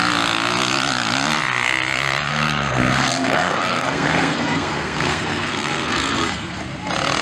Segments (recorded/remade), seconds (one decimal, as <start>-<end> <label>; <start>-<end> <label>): 0.0-2.3 recorded; 2.3-6.6 remade; 6.6-7.2 recorded